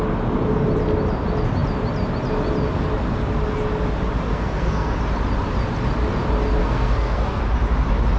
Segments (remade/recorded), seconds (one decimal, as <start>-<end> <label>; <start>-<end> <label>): 0.0-4.3 recorded; 4.3-5.0 remade; 5.0-6.6 recorded; 6.6-7.4 remade; 7.4-8.2 recorded